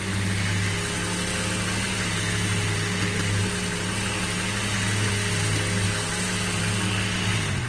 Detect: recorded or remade recorded